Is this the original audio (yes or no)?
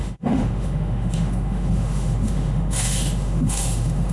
no